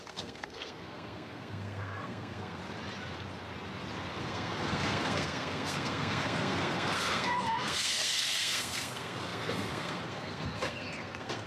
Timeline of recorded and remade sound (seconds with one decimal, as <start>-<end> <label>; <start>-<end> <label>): 0.0-2.6 remade; 2.6-4.2 recorded; 4.2-11.5 remade